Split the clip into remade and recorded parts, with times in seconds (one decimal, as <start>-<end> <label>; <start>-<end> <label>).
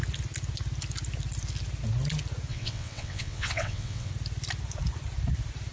0.0-2.5 recorded; 2.5-4.1 remade; 4.1-5.7 recorded